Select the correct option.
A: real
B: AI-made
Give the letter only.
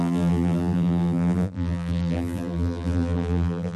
B